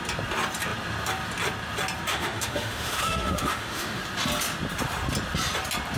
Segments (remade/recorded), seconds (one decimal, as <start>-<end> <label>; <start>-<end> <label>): 0.0-2.1 recorded; 2.1-4.0 remade; 4.0-6.0 recorded